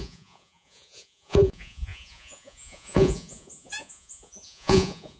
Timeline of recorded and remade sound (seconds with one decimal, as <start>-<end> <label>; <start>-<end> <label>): 0.0-5.2 remade